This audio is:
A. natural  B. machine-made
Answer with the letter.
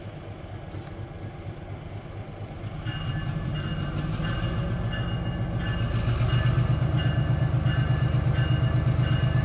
A